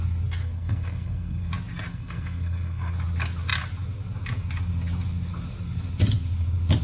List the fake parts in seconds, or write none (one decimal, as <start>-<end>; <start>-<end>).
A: 0.4-1.5; 1.9-2.9